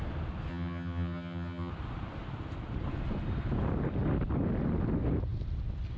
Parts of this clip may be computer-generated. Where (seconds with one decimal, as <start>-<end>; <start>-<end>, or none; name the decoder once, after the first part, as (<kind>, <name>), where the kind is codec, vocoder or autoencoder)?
0.5-1.7 (vocoder, HiFi-GAN)